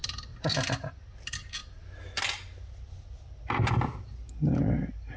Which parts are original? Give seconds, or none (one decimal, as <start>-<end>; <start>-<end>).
0.0-5.2